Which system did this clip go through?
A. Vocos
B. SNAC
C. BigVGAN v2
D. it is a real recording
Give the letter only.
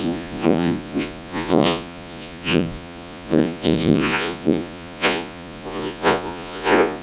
A